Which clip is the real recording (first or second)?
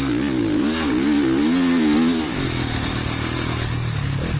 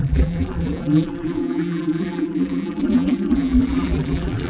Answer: first